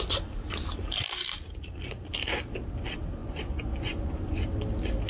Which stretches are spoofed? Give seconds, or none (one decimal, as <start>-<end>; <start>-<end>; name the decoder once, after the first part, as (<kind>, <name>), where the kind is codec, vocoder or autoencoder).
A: 3.2-4.4 (vocoder, Vocos)